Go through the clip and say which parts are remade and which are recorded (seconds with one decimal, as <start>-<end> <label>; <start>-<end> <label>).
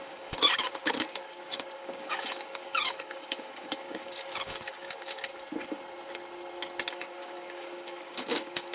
0.0-5.3 remade; 5.3-6.9 recorded; 6.9-8.7 remade